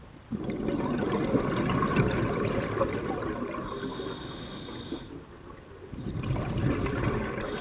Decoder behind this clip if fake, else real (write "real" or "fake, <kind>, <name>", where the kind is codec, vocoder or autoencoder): real